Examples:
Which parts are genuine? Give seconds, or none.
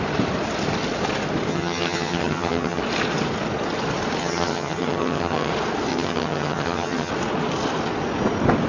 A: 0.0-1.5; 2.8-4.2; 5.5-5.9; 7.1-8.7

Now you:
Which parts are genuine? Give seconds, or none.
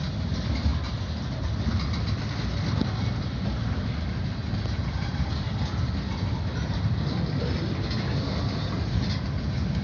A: 0.0-9.8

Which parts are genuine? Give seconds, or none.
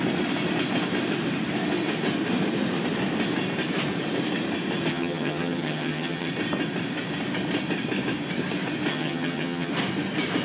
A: 0.0-4.9; 6.3-8.9; 9.7-10.4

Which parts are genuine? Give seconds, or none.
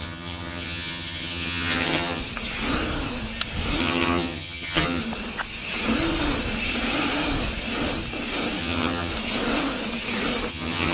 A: 2.2-3.8; 5.0-8.6; 9.1-10.5